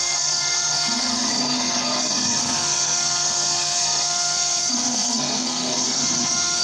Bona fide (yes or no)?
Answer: no